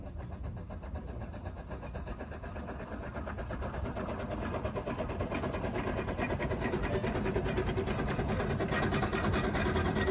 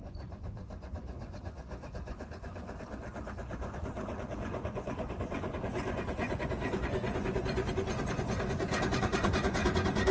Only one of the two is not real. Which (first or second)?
second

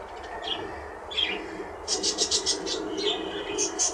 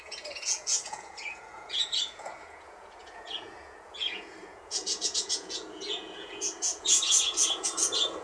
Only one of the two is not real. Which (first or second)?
second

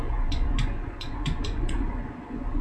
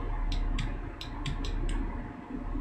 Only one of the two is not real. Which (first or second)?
first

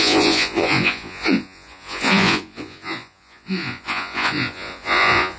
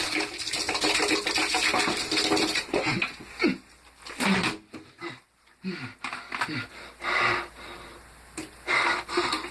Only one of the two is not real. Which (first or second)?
first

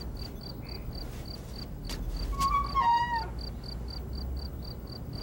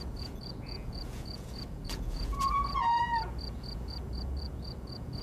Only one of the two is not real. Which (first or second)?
second